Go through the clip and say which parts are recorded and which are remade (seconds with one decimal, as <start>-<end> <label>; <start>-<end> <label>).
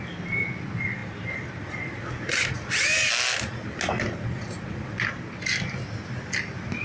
0.0-6.8 recorded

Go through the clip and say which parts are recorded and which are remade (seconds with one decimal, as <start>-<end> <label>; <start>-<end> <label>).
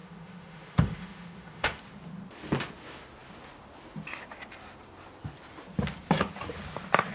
0.0-1.8 remade; 1.8-7.1 recorded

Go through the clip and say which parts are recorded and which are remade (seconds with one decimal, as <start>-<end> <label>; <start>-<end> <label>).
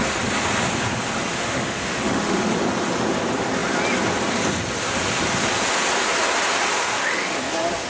0.0-1.3 recorded; 1.3-2.5 remade; 2.5-6.8 recorded; 6.8-7.5 remade; 7.5-7.9 recorded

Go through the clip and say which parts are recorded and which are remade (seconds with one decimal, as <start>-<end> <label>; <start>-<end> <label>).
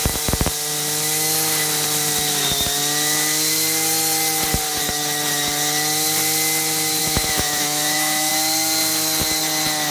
0.0-7.0 recorded; 7.0-8.3 remade; 8.3-9.9 recorded